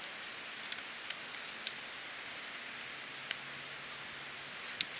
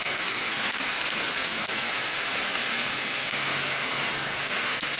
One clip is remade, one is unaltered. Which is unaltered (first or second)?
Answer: first